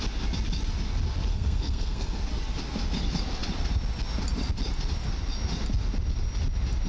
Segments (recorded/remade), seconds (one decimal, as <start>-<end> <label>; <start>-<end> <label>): 0.0-1.3 recorded; 1.3-2.2 remade; 2.2-6.9 recorded